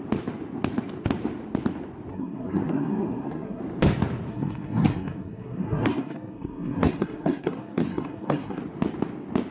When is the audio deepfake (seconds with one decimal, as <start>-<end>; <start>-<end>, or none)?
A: 2.1-3.6; 4.3-8.6